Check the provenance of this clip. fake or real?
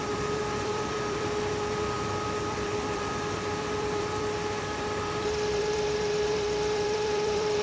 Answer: fake